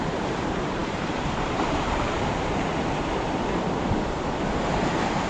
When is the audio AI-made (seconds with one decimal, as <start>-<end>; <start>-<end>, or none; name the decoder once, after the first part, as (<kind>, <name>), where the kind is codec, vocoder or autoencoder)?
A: 0.0-2.7 (vocoder, BigVGAN v2); 4.6-5.3